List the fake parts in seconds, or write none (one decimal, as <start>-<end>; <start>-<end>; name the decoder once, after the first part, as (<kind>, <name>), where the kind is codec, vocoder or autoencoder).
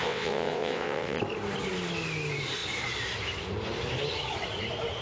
0.0-1.2 (vocoder, WaveNeXt)